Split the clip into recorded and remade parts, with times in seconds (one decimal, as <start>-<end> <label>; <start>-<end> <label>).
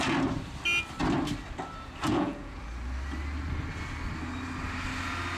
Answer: 0.0-2.1 recorded; 2.1-2.6 remade; 2.6-5.4 recorded